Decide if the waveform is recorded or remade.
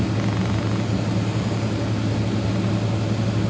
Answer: recorded